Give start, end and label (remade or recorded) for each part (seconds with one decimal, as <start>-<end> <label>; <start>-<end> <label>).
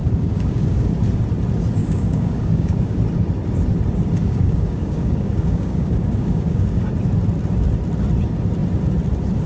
0.0-0.9 remade; 0.9-1.8 recorded; 1.8-3.0 remade; 3.0-4.2 recorded; 4.2-6.9 remade; 6.9-9.5 recorded